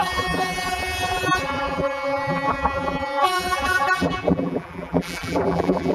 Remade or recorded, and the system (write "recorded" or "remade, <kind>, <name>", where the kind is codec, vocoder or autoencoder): remade, vocoder, BigVGAN v2